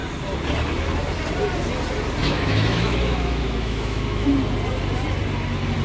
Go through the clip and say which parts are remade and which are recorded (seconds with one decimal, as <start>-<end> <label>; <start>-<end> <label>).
0.0-2.2 recorded; 2.2-4.3 remade; 4.3-5.8 recorded